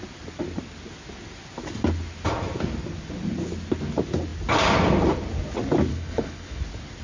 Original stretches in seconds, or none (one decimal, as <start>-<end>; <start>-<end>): 0.0-5.9; 6.6-7.0